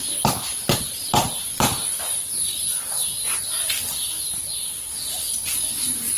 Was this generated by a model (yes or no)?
no